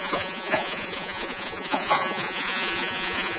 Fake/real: fake